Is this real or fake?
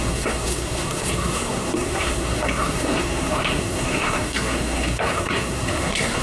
fake